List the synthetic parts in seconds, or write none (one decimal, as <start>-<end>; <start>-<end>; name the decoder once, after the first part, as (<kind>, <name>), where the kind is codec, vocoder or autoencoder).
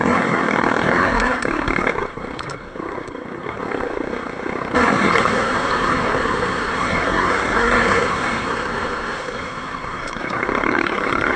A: 0.0-11.4 (codec, SNAC)